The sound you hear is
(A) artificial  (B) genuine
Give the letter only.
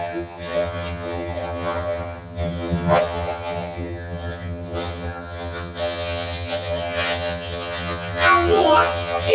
A